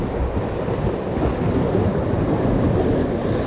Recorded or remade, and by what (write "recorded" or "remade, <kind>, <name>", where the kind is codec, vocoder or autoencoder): recorded